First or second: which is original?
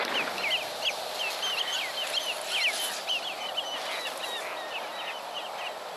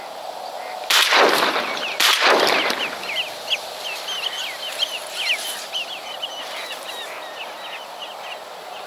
first